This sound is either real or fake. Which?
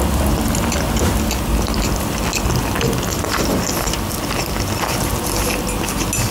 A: real